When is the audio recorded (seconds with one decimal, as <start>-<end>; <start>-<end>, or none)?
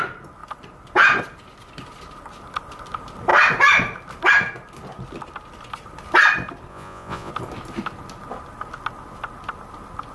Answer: 0.0-6.7; 7.3-10.1